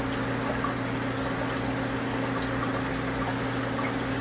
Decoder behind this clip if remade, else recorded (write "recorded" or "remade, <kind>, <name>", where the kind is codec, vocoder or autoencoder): recorded